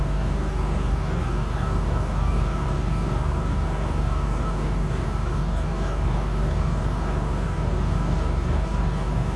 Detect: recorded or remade remade